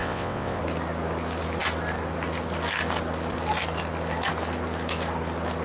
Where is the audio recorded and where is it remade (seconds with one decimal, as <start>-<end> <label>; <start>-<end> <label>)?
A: 0.0-0.6 remade; 0.6-5.6 recorded

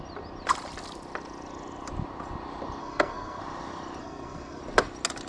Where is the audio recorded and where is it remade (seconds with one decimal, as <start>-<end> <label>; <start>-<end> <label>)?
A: 0.0-2.8 recorded; 2.8-3.4 remade; 3.4-4.0 recorded; 4.0-4.6 remade; 4.6-5.3 recorded

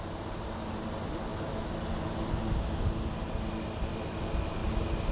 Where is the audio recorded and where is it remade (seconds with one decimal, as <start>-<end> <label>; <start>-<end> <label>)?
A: 0.0-5.1 recorded

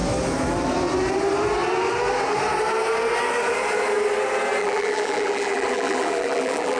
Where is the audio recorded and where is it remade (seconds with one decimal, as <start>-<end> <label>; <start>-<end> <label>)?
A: 0.0-4.6 recorded; 4.6-6.8 remade